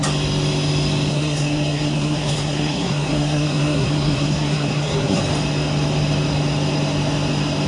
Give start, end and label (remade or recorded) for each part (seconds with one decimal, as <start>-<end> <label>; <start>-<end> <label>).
0.0-1.1 recorded; 1.1-5.2 remade; 5.2-7.7 recorded